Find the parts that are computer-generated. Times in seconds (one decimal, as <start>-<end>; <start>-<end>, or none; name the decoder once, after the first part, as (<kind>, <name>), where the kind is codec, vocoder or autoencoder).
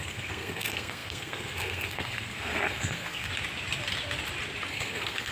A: 0.0-3.3 (codec, SNAC); 4.7-5.3